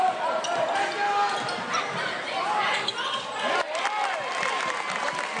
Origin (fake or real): real